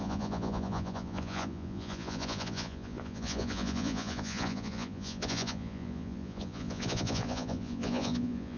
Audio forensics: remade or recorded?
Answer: remade